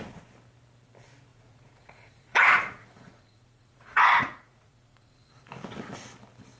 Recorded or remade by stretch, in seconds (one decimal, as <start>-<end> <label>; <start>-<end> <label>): 0.0-1.3 recorded; 1.3-5.3 remade; 5.3-6.6 recorded